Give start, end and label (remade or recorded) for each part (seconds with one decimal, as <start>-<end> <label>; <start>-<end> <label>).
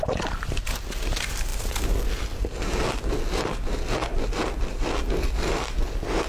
0.0-6.3 recorded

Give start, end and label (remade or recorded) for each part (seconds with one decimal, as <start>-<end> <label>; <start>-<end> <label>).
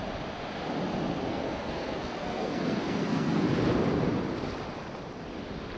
0.0-1.3 recorded; 1.3-3.5 remade; 3.5-5.8 recorded